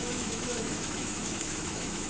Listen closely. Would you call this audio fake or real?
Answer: fake